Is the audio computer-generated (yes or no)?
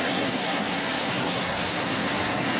yes